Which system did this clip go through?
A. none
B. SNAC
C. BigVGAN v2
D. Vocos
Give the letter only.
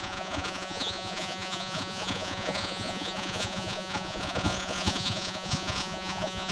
D